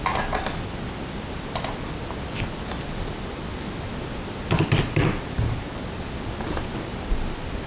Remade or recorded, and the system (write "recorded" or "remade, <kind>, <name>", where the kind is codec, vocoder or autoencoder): recorded